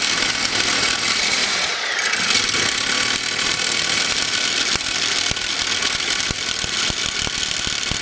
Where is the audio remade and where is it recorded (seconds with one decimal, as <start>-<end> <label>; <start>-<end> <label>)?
0.0-1.4 recorded; 1.4-1.9 remade; 1.9-8.0 recorded